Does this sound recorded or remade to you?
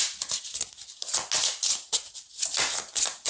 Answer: recorded